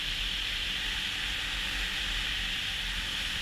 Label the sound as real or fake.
real